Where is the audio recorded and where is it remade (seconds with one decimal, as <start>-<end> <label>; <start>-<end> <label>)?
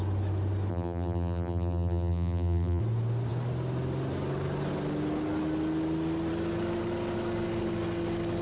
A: 0.0-0.7 recorded; 0.7-2.8 remade; 2.8-8.4 recorded